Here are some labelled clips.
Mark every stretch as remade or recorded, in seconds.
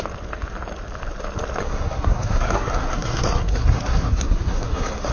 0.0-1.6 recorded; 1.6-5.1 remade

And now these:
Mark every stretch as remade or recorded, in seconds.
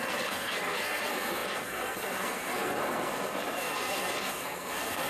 0.0-5.1 remade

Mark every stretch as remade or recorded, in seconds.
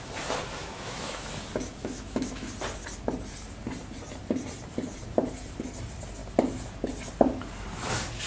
0.0-0.6 recorded; 0.6-1.3 remade; 1.3-1.8 recorded; 1.8-2.5 remade; 2.5-8.3 recorded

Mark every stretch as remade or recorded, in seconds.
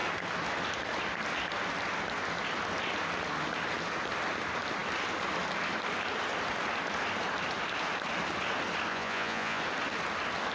0.0-8.9 recorded; 8.9-9.6 remade; 9.6-10.5 recorded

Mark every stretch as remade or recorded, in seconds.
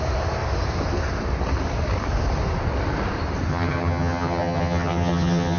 0.0-3.5 recorded; 3.5-5.6 remade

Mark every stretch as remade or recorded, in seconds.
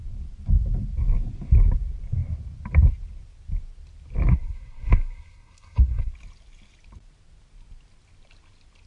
0.0-4.3 recorded; 4.3-6.1 remade; 6.1-8.9 recorded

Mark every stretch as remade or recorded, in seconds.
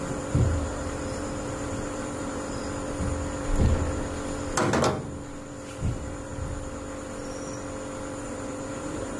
0.0-2.6 remade; 2.6-5.8 recorded; 5.8-6.3 remade; 6.3-8.2 recorded; 8.2-9.2 remade